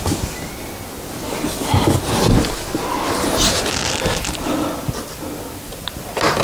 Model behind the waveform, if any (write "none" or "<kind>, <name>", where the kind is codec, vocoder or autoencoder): none